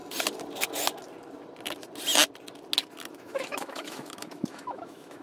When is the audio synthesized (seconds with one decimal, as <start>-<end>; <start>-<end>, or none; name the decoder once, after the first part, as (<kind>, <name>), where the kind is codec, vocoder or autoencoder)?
3.1-5.2 (autoencoder, DAC-VAE)